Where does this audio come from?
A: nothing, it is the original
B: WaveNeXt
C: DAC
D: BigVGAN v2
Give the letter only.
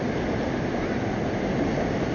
A